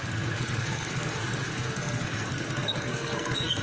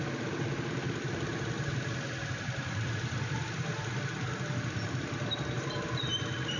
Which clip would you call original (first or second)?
second